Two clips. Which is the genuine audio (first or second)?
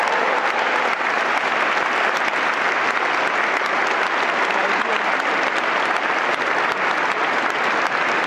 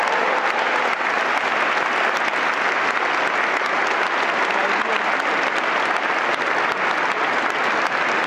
second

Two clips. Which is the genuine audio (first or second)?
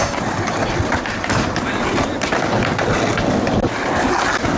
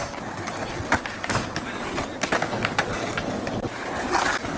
second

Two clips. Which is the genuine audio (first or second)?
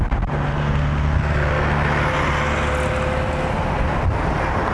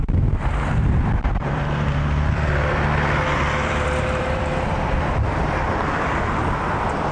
first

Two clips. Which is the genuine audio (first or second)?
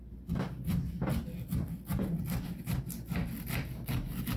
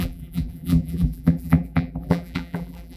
first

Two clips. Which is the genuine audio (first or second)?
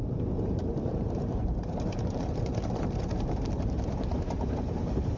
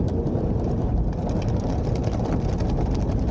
second